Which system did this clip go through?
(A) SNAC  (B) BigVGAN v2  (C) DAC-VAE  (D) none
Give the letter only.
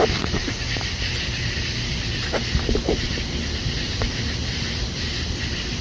B